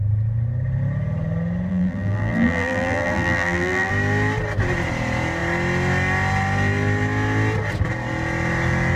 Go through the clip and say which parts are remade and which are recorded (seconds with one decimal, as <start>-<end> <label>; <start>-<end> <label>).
0.0-1.7 recorded; 1.7-3.9 remade; 3.9-9.0 recorded

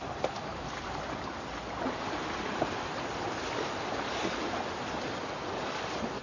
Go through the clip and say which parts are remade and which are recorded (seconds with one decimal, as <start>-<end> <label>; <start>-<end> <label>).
0.0-0.5 recorded; 0.5-4.2 remade; 4.2-6.2 recorded